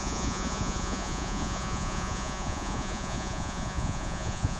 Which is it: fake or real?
fake